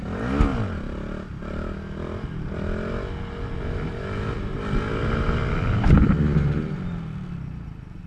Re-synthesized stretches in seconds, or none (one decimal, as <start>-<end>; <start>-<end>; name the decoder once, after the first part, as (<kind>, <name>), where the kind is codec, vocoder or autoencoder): none